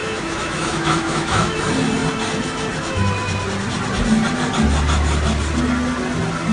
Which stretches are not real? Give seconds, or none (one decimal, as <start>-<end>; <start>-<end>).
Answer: 0.0-1.6